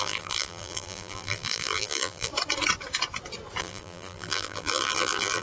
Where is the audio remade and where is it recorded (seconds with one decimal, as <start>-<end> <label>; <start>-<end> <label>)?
0.0-2.3 remade; 2.3-3.6 recorded; 3.6-5.4 remade